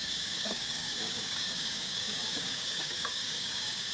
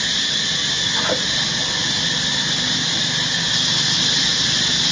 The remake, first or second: first